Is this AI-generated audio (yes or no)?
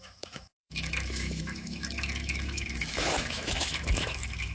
yes